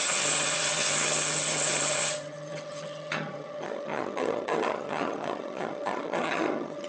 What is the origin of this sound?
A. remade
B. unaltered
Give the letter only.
A